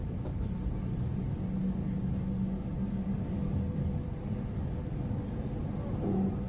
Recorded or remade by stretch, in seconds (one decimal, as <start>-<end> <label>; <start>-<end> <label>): 0.0-1.6 recorded; 1.6-5.5 remade; 5.5-6.5 recorded